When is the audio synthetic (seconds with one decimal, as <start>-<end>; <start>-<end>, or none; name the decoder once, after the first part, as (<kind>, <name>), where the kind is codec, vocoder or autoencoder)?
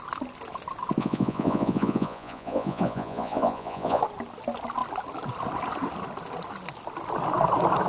1.0-4.0 (vocoder, Vocos)